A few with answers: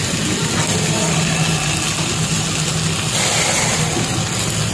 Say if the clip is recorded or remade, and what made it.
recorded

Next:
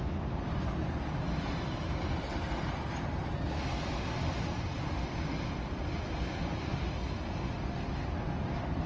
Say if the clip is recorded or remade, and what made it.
recorded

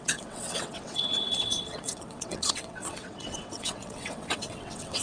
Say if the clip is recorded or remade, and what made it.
remade, vocoder, WaveNeXt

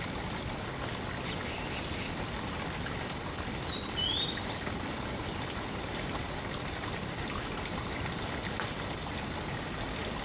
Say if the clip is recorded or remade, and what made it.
recorded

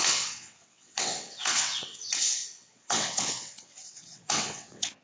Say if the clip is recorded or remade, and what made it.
remade, vocoder, WaveNeXt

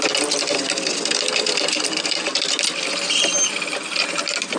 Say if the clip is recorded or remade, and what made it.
recorded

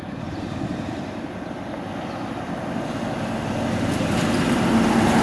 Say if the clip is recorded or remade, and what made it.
recorded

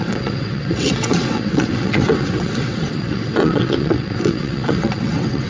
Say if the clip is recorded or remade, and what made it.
remade, vocoder, WaveNeXt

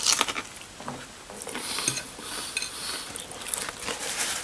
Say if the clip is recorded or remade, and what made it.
recorded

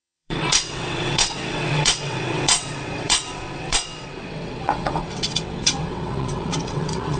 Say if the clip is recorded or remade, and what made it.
remade, vocoder, WaveNeXt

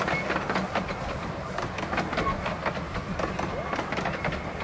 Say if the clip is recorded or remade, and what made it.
recorded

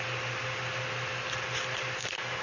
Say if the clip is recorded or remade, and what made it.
recorded